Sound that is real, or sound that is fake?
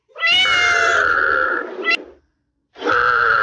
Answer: fake